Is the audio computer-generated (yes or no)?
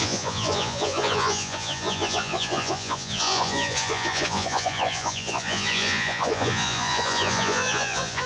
yes